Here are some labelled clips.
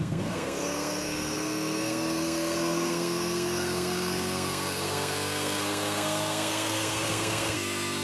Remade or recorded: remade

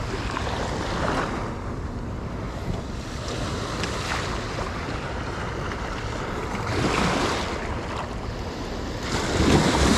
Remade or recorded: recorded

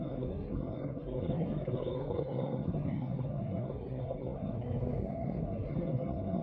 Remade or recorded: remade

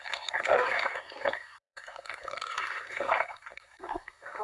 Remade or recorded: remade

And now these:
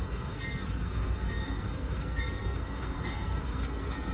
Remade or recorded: remade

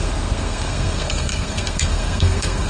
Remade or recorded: remade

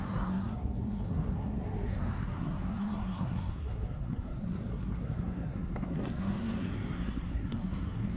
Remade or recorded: remade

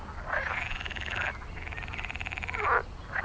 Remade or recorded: recorded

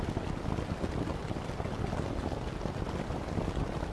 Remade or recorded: recorded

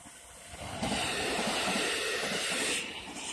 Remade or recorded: recorded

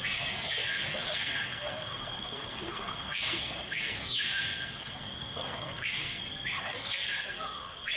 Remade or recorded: remade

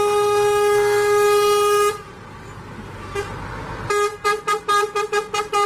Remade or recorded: recorded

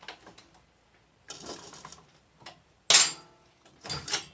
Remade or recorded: recorded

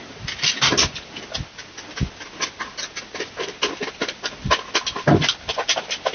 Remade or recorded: recorded